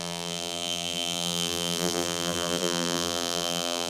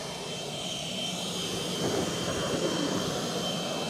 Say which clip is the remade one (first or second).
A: first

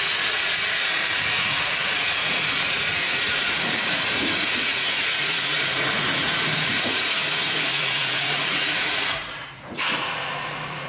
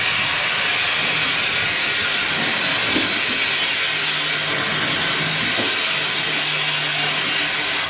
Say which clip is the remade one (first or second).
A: first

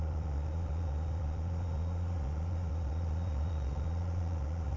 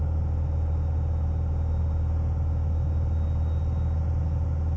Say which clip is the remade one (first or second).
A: first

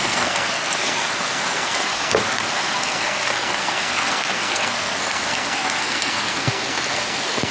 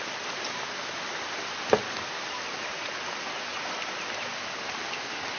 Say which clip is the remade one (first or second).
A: first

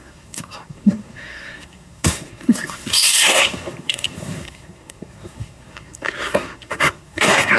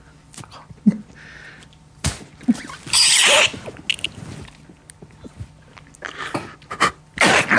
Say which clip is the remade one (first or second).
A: first